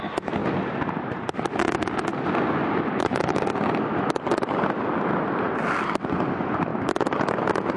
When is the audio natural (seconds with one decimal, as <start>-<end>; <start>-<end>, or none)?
0.0-2.1; 6.0-7.8